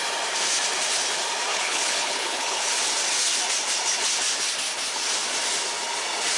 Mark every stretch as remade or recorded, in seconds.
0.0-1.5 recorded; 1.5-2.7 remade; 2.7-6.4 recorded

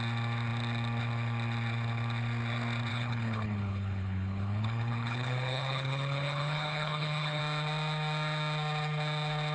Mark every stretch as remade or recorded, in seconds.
0.0-2.9 recorded; 2.9-7.4 remade; 7.4-9.5 recorded

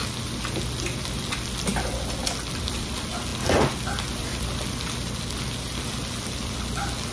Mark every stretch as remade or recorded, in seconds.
0.0-7.1 recorded

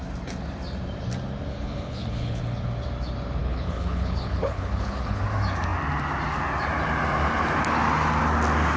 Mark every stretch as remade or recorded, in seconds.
0.0-1.5 recorded; 1.5-2.4 remade; 2.4-3.4 recorded; 3.4-5.2 remade; 5.2-8.8 recorded